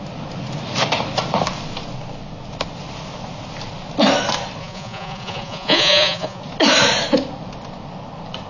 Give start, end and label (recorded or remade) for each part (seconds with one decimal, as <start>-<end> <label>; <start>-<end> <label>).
0.0-4.6 recorded; 4.6-6.4 remade; 6.4-8.5 recorded